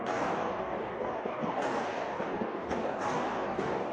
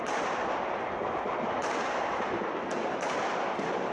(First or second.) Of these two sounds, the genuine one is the second